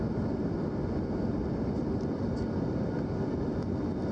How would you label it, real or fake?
real